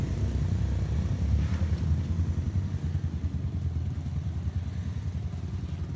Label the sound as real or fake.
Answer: real